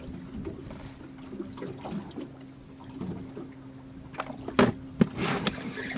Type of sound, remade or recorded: recorded